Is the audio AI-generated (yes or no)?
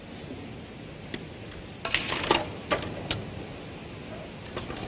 no